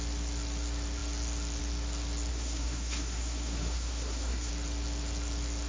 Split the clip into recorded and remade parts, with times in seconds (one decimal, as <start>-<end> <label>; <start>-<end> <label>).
0.0-2.3 recorded; 2.3-4.5 remade; 4.5-5.7 recorded